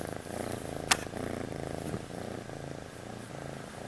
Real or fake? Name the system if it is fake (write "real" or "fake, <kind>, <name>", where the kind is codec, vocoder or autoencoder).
real